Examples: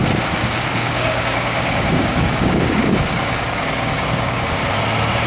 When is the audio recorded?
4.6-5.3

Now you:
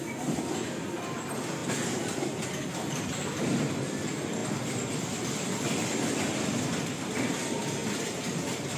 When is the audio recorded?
0.0-8.8

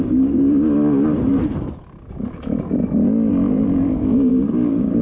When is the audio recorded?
1.3-4.3

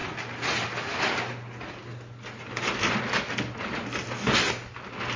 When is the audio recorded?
0.0-5.2